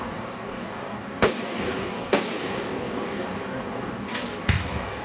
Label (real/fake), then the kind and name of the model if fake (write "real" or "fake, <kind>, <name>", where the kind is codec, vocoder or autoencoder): fake, codec, DAC